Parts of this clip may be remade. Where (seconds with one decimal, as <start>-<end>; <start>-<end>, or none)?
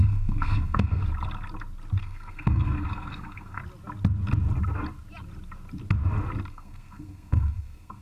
0.0-1.0; 2.0-3.6; 6.5-8.0